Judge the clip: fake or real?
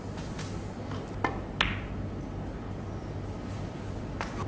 real